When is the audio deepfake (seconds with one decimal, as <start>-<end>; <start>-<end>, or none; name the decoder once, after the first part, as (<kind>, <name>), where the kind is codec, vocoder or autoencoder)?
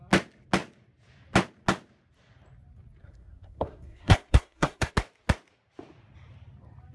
3.0-4.9 (codec, SNAC)